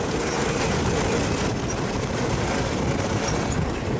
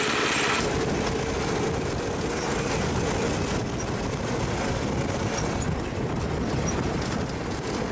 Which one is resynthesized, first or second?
first